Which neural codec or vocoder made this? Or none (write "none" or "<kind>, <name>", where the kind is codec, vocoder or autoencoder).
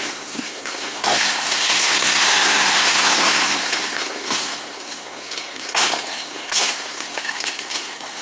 codec, SNAC